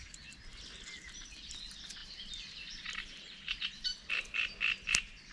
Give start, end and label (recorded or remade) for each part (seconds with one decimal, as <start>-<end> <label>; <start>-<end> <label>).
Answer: 0.0-2.0 recorded; 2.0-4.1 remade; 4.1-5.3 recorded